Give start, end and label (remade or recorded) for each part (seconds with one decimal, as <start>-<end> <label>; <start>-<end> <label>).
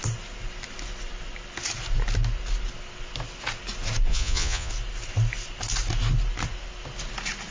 0.0-4.1 recorded; 4.1-4.7 remade; 4.7-7.5 recorded